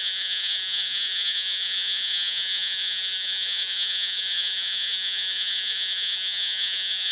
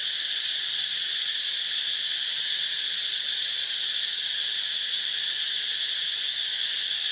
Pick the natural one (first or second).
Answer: second